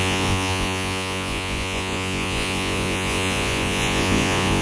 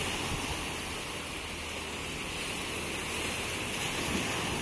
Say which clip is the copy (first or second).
first